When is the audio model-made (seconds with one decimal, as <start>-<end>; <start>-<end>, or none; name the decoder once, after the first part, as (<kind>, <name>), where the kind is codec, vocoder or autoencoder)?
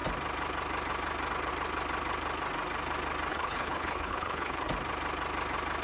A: 3.3-4.7 (codec, HILCodec)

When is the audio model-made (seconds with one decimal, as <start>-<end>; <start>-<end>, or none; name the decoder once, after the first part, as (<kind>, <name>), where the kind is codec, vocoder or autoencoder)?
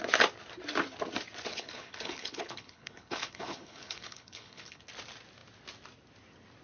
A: 1.5-4.8 (codec, HILCodec)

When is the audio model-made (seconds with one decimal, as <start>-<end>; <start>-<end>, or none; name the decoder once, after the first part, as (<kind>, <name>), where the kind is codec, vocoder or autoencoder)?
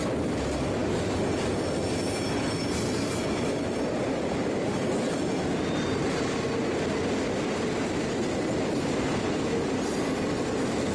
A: none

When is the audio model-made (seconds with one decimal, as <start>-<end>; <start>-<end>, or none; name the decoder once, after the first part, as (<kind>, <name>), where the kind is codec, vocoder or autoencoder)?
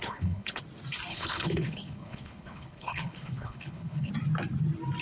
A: 0.0-0.6 (codec, HILCodec); 1.1-4.1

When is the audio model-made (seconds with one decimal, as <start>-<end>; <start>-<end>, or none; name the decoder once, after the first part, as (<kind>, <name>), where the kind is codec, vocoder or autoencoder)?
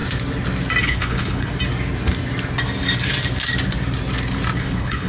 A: 0.8-1.5 (codec, HILCodec); 4.6-5.1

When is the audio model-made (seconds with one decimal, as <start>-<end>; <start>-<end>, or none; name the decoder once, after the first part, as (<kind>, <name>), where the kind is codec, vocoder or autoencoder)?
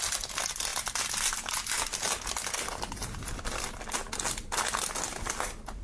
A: none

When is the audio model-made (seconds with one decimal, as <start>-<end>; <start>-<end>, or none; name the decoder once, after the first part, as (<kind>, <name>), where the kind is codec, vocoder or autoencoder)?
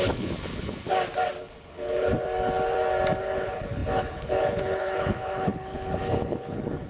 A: 0.0-0.9 (codec, HILCodec); 1.4-2.1; 3.2-6.9